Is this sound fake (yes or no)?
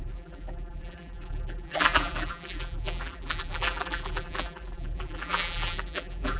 yes